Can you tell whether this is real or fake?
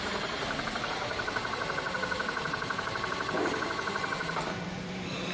fake